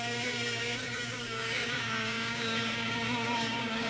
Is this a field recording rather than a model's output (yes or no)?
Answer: no